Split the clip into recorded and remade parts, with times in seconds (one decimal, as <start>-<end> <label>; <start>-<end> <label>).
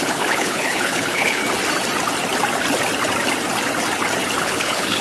0.0-1.4 remade; 1.4-4.4 recorded; 4.4-5.0 remade